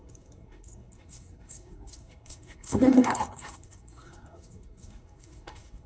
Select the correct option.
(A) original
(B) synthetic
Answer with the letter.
B